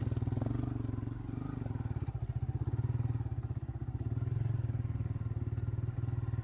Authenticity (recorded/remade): recorded